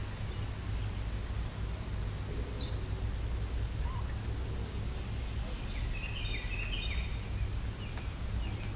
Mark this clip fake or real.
real